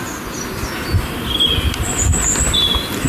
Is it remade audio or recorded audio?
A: recorded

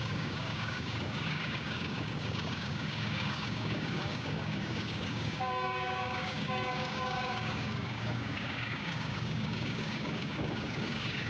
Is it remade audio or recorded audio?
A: remade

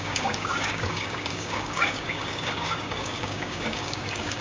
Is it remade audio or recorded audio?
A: remade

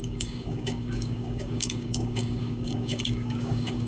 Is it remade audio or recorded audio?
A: remade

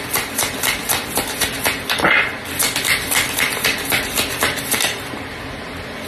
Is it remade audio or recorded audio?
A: recorded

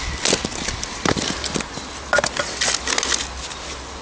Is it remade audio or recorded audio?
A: recorded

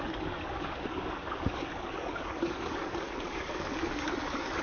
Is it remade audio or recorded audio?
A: remade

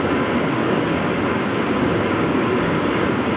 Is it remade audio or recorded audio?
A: remade